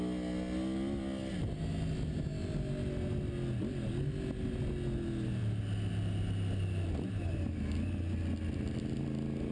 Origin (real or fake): real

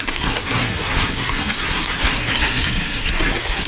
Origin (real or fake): fake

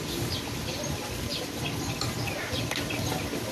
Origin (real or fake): real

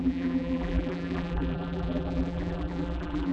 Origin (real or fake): fake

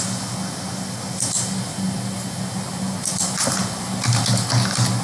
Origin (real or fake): real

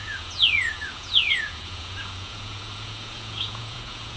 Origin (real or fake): fake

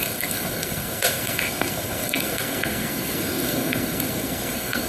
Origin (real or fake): fake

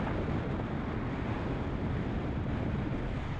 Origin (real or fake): real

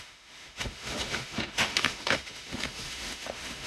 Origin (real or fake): fake